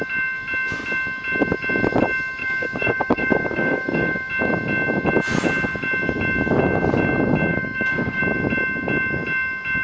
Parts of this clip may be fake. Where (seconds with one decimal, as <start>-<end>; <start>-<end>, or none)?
2.4-4.3; 7.5-8.2